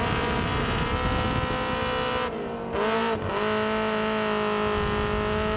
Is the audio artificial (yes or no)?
no